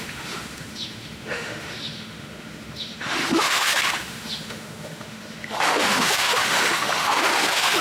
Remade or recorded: remade